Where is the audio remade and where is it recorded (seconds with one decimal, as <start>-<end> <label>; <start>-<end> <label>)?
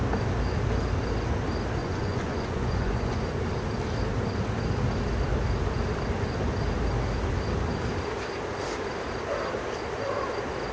0.0-1.8 recorded; 1.8-3.2 remade; 3.2-10.7 recorded